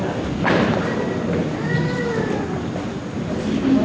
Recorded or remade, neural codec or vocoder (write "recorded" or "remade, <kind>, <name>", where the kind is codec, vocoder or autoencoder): recorded